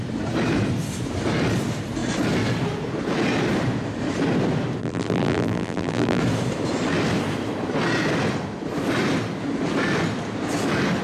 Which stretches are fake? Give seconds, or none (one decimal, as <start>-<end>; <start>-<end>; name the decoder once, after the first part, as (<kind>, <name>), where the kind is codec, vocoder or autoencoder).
4.8-6.2 (vocoder, BigVGAN v2)